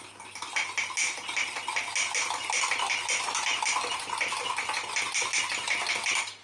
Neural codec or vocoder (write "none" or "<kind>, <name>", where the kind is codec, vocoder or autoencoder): none